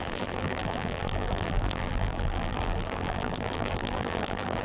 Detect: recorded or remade remade